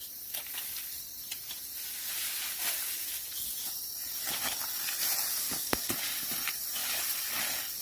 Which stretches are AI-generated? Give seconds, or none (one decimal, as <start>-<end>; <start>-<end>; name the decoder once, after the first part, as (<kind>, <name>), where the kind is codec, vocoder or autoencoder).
5.4-5.9 (codec, DAC)